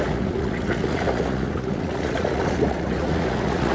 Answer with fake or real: fake